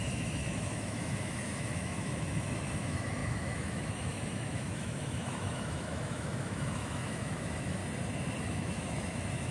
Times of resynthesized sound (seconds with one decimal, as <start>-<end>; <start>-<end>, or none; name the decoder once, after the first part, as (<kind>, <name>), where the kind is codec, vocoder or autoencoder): 0.0-7.8 (autoencoder, DAC-VAE); 8.4-9.5